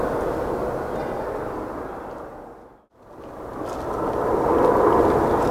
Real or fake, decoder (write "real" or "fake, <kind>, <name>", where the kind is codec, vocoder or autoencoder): real